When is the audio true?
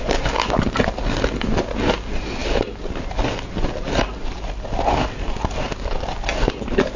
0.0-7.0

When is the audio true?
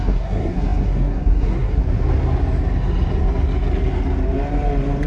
1.8-5.1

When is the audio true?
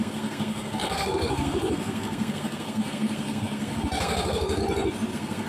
4.6-5.1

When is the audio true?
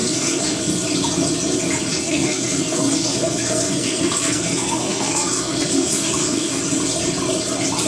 0.6-1.9; 6.6-7.9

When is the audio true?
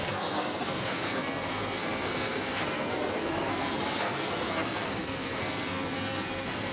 none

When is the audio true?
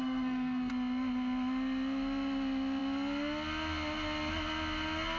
0.7-5.2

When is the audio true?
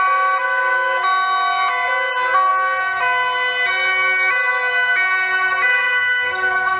0.0-5.7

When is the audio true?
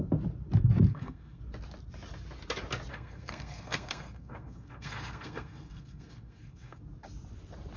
0.0-0.9; 1.4-2.9; 6.8-7.8